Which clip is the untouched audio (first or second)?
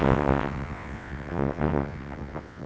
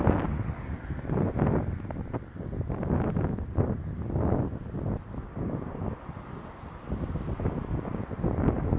second